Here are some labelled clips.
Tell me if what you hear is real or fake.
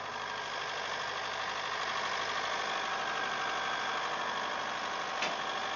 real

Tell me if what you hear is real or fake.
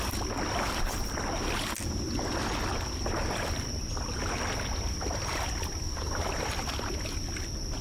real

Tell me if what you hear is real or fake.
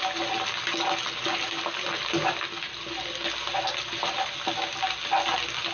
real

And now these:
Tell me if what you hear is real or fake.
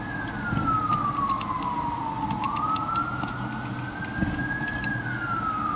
real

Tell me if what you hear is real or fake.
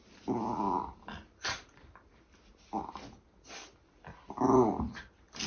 real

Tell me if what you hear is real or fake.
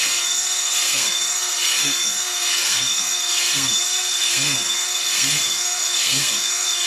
fake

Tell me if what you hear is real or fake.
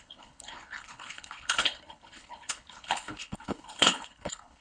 fake